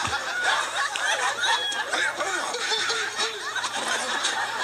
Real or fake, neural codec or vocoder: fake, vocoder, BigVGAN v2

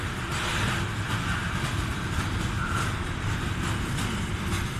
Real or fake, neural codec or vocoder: real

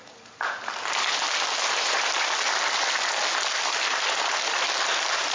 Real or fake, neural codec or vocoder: real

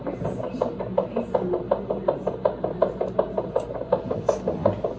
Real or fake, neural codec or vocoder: real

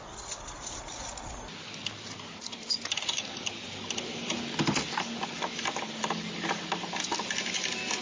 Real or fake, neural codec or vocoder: real